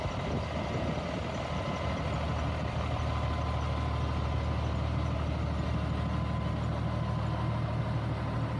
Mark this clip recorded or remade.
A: recorded